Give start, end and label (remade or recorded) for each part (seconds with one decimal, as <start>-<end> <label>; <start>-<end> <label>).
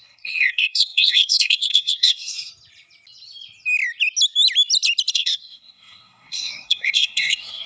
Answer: 0.0-2.5 remade; 2.5-5.1 recorded; 5.1-7.7 remade